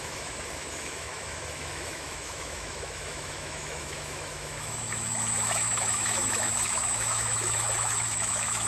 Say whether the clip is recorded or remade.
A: remade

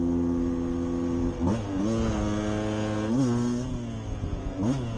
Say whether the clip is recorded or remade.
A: recorded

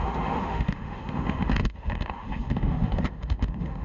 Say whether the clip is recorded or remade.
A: remade